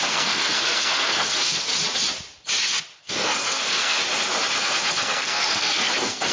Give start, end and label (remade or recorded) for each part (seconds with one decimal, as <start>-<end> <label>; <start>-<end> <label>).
0.0-1.7 remade; 1.7-3.0 recorded; 3.0-4.0 remade; 4.0-4.6 recorded; 4.6-6.3 remade